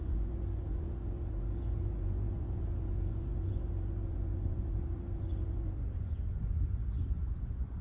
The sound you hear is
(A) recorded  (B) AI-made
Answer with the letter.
B